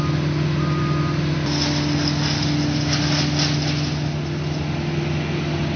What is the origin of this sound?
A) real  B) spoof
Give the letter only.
A